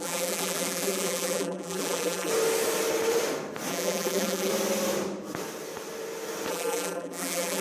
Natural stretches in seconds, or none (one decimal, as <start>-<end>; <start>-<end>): 2.3-3.7; 4.5-6.5